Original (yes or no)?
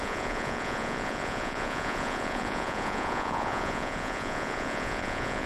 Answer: no